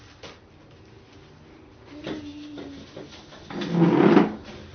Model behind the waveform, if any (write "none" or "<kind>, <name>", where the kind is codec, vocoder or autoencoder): none